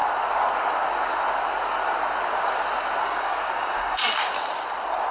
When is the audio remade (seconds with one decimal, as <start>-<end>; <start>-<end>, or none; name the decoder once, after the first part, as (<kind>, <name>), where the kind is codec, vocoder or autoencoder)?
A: 3.0-4.0 (codec, DAC)